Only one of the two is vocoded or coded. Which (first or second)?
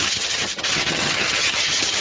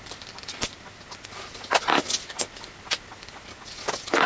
first